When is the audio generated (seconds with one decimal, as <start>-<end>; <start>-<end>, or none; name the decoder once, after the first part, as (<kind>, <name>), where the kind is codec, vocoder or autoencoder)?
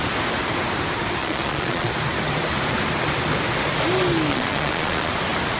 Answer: 1.2-1.9 (vocoder, Vocos); 4.3-5.1